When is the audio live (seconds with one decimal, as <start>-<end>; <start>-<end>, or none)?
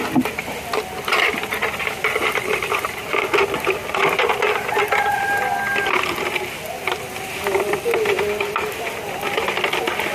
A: 0.0-10.1